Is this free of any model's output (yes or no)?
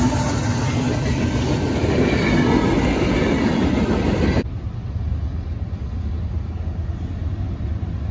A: yes